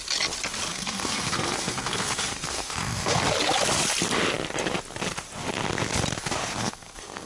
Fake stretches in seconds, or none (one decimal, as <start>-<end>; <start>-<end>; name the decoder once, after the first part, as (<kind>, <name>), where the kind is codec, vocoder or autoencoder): 0.7-3.2 (codec, SNAC); 6.6-7.3